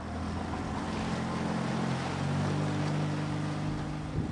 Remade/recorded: recorded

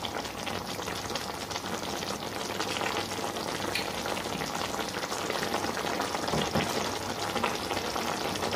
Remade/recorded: recorded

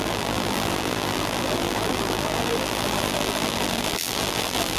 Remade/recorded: remade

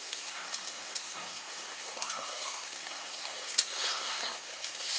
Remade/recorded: remade